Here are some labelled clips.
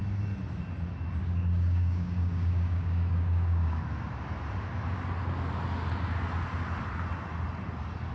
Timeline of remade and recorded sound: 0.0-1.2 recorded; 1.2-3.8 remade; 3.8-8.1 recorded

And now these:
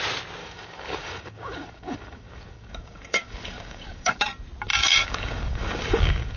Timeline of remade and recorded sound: 0.0-0.4 recorded; 0.4-4.2 remade; 4.2-4.7 recorded; 4.7-6.4 remade

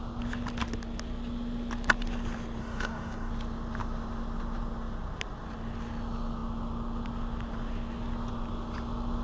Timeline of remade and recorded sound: 0.0-2.6 recorded; 2.6-3.3 remade; 3.3-9.2 recorded